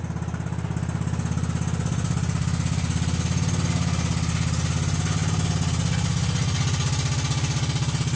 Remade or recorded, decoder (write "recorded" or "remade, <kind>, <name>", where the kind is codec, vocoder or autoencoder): recorded